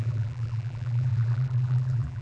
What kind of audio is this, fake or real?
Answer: fake